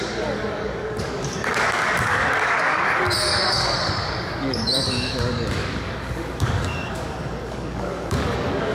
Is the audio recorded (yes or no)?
no